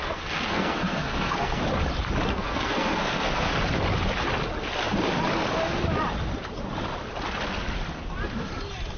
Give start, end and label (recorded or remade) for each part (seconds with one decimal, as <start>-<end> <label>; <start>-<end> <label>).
0.0-1.6 remade; 1.6-2.3 recorded; 2.3-3.5 remade; 3.5-9.0 recorded